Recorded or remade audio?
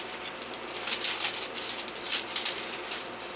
recorded